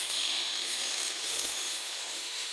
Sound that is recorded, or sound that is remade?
remade